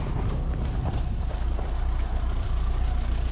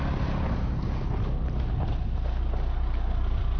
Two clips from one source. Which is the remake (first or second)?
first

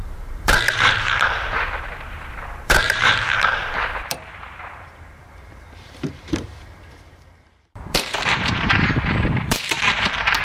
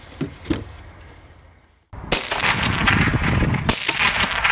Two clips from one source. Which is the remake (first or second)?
first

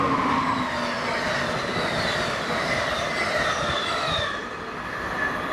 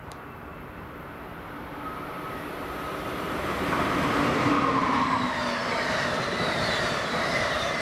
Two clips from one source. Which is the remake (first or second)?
second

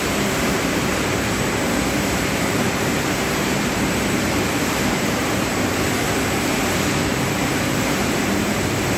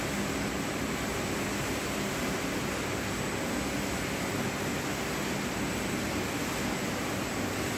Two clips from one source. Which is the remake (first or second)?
first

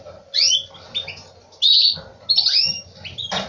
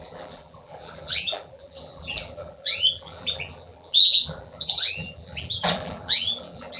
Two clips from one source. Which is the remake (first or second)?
second